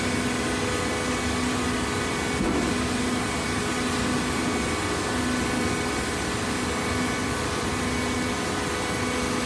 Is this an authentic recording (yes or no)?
yes